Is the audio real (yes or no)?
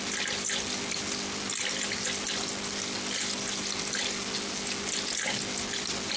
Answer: yes